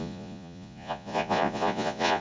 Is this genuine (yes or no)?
no